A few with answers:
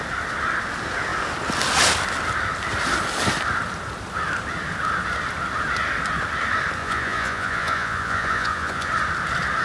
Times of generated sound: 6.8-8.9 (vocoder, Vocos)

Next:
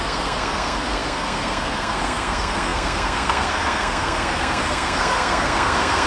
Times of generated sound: 0.0-6.1 (codec, SNAC)

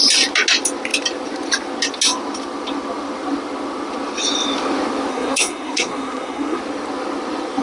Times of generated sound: 5.1-6.6 (codec, SNAC)

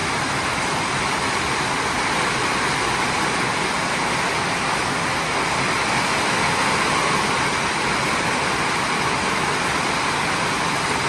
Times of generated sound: none

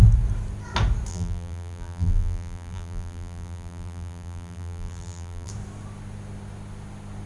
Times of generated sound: 1.1-5.5 (vocoder, BigVGAN v2)

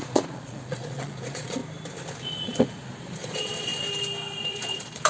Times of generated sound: 0.0-1.6 (vocoder, Vocos); 2.2-3.7; 4.4-5.1